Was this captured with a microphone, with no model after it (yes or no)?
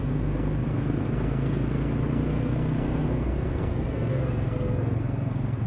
no